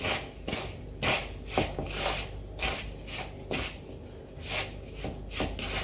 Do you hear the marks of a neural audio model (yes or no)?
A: no